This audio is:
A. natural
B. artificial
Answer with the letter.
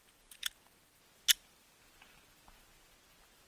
A